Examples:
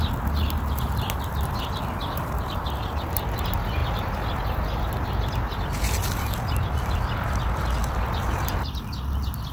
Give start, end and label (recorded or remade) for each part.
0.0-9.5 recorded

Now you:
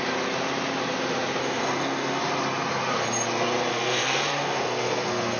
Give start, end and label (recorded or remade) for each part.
0.0-1.4 recorded; 1.4-2.2 remade; 2.2-3.7 recorded; 3.7-5.4 remade

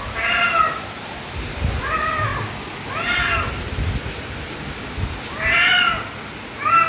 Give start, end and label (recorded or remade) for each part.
0.0-6.9 recorded

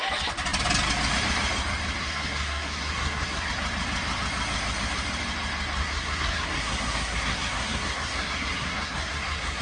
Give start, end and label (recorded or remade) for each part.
0.0-2.0 recorded; 2.0-3.5 remade; 3.5-5.8 recorded; 5.8-9.6 remade